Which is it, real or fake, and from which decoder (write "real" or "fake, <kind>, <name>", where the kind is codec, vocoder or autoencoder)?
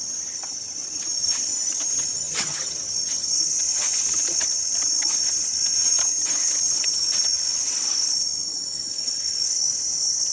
fake, vocoder, HiFi-GAN